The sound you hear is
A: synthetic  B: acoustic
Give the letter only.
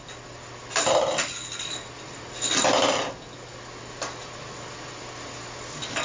B